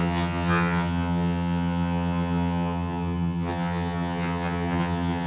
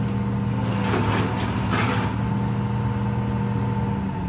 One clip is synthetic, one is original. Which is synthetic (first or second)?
first